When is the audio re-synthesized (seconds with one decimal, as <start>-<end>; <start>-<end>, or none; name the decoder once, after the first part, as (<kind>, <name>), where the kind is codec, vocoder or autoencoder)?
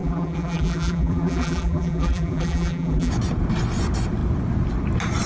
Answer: 0.0-3.1 (vocoder, BigVGAN v2)